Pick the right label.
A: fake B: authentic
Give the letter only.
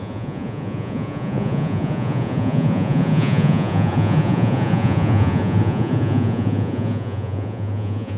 A